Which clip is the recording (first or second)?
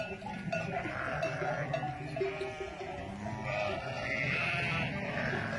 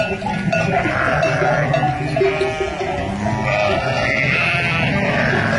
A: second